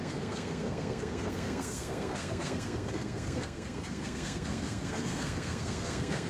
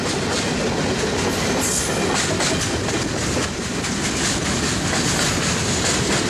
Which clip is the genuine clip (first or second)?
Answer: second